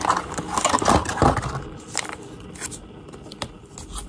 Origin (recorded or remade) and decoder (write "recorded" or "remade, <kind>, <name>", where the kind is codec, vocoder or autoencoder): recorded